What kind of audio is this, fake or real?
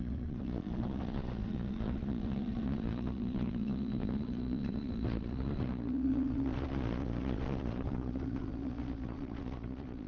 fake